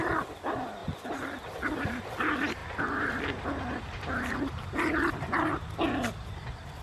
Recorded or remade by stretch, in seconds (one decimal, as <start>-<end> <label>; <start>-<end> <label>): 0.0-6.8 recorded